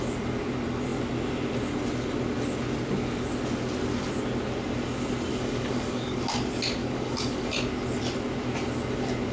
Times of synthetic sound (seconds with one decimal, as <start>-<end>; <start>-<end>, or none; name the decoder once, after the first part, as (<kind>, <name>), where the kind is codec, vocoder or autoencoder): 5.3-6.2 (codec, DAC); 6.8-7.5